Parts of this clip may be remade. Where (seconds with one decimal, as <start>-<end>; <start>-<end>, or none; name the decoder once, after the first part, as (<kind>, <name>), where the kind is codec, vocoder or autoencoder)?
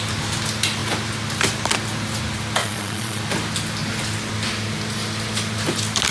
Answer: 2.6-3.2 (vocoder, Vocos)